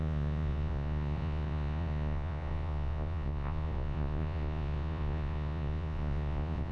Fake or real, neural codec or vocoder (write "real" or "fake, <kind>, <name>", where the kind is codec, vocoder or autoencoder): fake, vocoder, Vocos